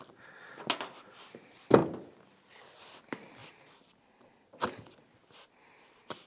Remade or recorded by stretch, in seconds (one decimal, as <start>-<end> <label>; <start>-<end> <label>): 0.0-6.3 recorded

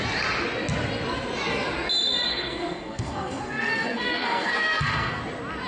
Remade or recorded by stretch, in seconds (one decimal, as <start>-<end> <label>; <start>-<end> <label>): 0.0-2.3 recorded; 2.3-5.2 remade; 5.2-5.7 recorded

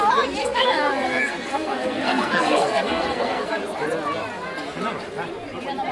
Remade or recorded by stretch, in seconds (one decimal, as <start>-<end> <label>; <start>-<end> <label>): 0.0-0.4 recorded; 0.4-3.6 remade; 3.6-5.9 recorded

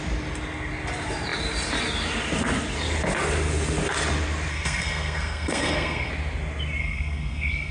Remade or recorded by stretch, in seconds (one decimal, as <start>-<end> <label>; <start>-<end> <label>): 0.0-4.5 recorded; 4.5-6.1 remade; 6.1-6.8 recorded; 6.8-7.7 remade

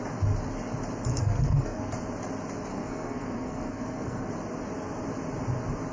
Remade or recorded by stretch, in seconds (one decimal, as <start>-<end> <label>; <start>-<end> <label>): 0.0-1.1 recorded; 1.1-1.9 remade; 1.9-2.7 recorded; 2.7-4.3 remade; 4.3-5.9 recorded

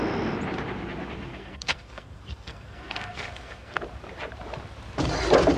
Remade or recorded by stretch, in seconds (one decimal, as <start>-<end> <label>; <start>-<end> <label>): 0.0-1.3 recorded; 1.3-3.8 remade; 3.8-5.6 recorded